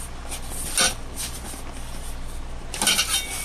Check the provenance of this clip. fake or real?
real